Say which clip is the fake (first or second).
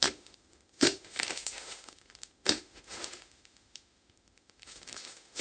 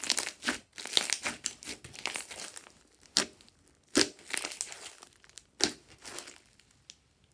first